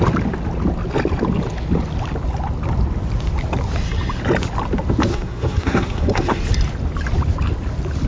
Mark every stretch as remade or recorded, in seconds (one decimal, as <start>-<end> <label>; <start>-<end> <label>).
0.0-5.1 recorded; 5.1-6.4 remade; 6.4-8.1 recorded